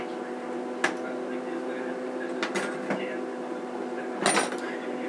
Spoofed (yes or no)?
no